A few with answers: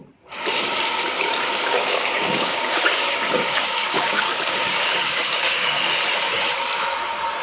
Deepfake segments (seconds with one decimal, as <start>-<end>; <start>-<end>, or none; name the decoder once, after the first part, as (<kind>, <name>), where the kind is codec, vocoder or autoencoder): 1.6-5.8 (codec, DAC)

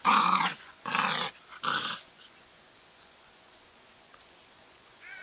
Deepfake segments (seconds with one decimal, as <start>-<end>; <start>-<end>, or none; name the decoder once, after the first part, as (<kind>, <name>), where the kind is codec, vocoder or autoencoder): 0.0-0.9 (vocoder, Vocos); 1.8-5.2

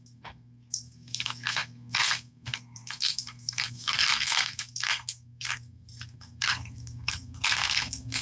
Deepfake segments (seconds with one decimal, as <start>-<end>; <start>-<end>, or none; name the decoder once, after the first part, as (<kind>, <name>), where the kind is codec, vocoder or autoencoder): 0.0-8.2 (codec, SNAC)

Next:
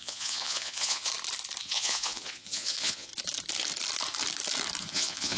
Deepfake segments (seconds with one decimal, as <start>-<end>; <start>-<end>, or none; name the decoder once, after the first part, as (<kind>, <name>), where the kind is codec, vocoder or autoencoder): 0.0-1.1 (vocoder, Vocos); 1.6-3.1; 4.8-5.4